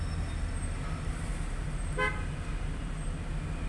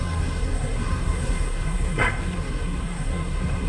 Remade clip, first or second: second